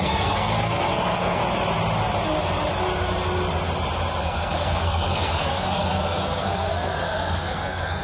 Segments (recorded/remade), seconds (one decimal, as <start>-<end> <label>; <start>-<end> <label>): 0.0-1.4 remade; 1.4-4.2 recorded; 4.2-8.0 remade

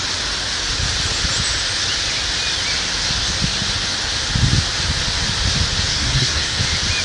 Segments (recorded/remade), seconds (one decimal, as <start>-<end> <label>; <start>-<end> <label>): 0.0-5.9 recorded; 5.9-6.6 remade; 6.6-7.0 recorded

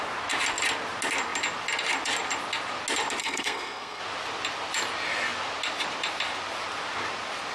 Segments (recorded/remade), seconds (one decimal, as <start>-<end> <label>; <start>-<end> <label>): 0.0-3.2 recorded; 3.2-4.0 remade; 4.0-7.5 recorded

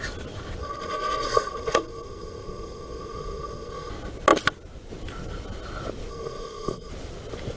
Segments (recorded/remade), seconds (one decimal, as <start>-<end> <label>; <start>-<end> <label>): 0.0-0.6 recorded; 0.6-3.9 remade; 3.9-6.1 recorded; 6.1-6.9 remade; 6.9-7.6 recorded